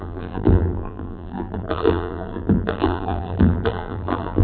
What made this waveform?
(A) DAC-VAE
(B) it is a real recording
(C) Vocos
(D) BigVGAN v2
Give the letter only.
D